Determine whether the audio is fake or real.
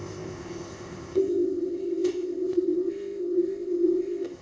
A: fake